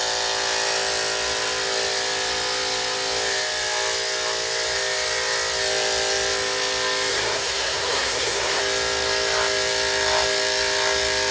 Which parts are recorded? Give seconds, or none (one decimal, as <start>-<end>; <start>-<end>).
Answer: 0.0-7.1; 8.6-11.3